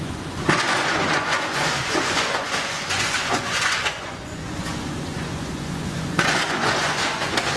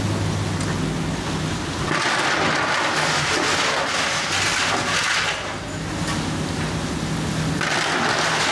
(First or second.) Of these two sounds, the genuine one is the second